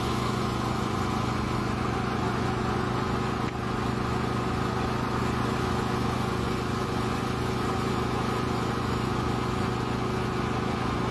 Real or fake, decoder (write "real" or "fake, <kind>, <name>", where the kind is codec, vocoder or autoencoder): fake, vocoder, Vocos